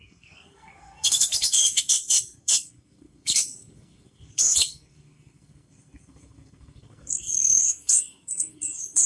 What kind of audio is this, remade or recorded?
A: remade